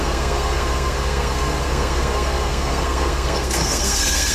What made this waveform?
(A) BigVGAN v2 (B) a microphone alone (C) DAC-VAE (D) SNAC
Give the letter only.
D